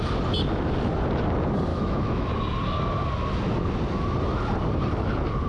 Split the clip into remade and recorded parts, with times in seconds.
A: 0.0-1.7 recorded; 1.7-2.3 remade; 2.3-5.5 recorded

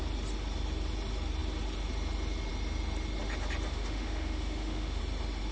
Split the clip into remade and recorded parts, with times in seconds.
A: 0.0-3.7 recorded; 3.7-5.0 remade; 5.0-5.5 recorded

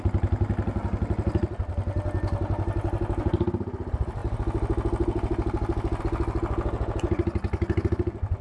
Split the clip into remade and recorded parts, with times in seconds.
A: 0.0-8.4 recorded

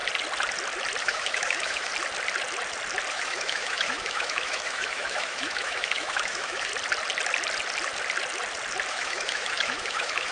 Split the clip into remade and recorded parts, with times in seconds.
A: 0.0-1.0 recorded; 1.0-1.9 remade; 1.9-3.1 recorded; 3.1-6.7 remade; 6.7-8.9 recorded; 8.9-10.3 remade

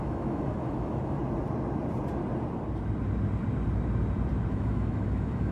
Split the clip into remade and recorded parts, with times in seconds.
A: 0.0-1.2 remade; 1.2-4.5 recorded; 4.5-5.5 remade